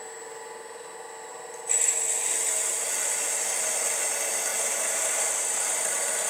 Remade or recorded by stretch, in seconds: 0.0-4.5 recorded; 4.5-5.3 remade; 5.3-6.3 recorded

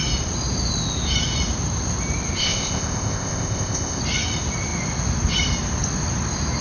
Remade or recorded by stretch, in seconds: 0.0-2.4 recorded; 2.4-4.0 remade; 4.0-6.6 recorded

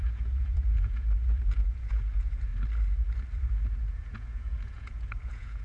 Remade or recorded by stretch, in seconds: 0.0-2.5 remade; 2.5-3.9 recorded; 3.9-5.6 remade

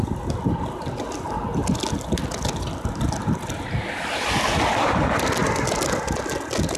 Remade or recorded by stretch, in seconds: 0.0-6.8 recorded